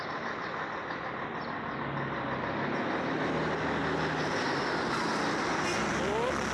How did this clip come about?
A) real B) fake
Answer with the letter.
A